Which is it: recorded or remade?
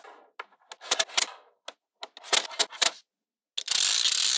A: recorded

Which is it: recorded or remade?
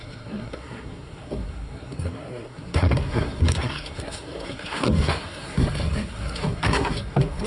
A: remade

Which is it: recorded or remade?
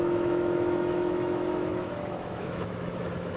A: remade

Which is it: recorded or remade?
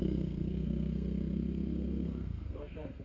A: remade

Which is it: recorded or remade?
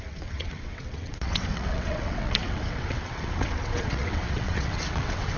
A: remade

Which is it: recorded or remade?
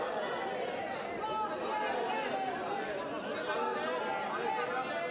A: recorded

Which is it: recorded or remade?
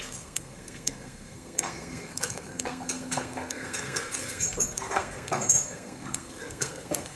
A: remade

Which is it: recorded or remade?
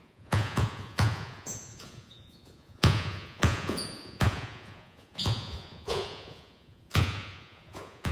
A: remade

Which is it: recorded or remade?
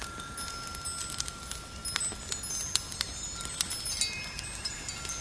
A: recorded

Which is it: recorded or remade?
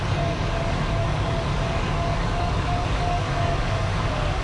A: remade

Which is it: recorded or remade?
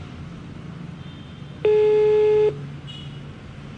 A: recorded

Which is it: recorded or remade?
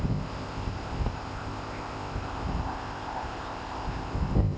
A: remade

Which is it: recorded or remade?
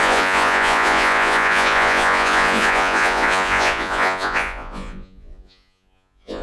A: remade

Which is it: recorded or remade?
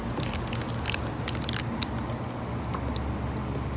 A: recorded